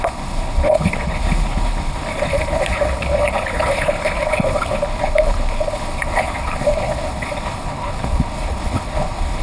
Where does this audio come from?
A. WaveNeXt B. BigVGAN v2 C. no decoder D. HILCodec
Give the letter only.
D